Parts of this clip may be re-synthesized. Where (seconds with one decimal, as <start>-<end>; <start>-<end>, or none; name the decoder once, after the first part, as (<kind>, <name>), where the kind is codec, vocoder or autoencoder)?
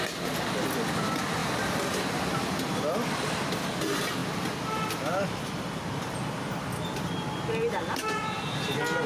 none